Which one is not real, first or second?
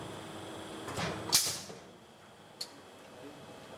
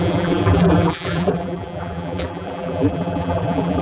second